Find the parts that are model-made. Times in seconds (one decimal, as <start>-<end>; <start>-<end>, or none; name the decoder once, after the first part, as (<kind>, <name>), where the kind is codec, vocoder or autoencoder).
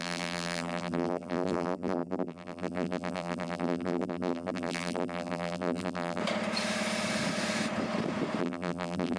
0.0-6.2 (vocoder, BigVGAN v2); 8.4-9.2